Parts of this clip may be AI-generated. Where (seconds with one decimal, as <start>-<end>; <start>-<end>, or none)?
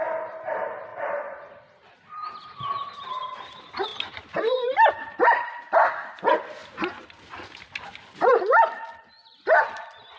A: 0.0-0.9; 1.6-3.9; 4.9-6.6; 9.7-10.2